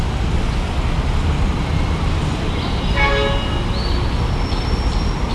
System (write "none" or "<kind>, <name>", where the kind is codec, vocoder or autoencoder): none